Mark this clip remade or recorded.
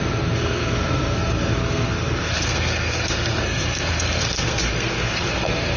remade